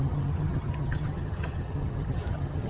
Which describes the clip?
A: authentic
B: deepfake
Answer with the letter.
B